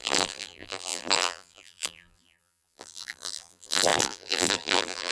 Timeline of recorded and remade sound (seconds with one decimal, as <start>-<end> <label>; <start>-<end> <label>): 0.0-5.1 remade